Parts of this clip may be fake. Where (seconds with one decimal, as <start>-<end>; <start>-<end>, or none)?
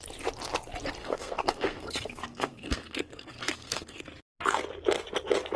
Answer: 1.0-4.0